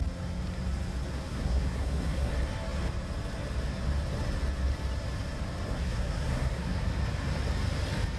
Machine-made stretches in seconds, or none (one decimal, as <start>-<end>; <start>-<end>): 1.1-2.3; 5.7-6.9

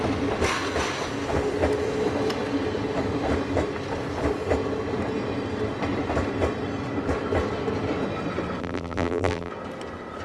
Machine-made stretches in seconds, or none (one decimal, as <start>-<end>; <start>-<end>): 8.6-9.5

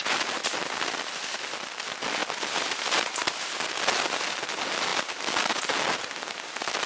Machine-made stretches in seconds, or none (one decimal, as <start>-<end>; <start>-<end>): none

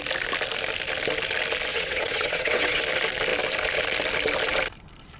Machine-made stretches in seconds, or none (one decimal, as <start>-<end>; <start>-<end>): 1.7-2.8

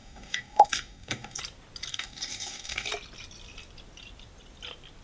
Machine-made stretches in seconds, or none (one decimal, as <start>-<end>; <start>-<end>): 0.0-1.4; 1.9-2.9

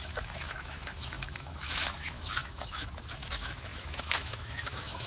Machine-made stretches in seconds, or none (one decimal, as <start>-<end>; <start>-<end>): 0.0-5.1

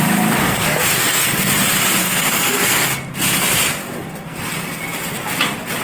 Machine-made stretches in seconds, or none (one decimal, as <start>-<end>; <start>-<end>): 0.4-1.5; 2.0-2.9; 3.8-4.8

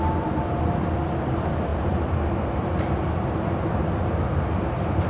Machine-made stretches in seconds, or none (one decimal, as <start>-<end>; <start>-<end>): none